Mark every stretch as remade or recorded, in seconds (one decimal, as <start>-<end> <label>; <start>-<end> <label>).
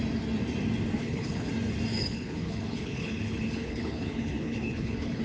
0.0-1.0 recorded; 1.0-1.5 remade; 1.5-1.9 recorded; 1.9-5.2 remade